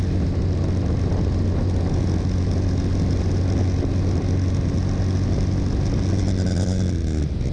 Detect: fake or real real